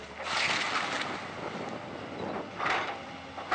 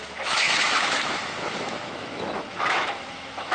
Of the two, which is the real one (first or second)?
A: first